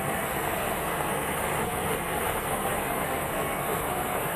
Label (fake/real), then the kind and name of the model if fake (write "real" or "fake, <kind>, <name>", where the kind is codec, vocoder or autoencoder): fake, codec, SNAC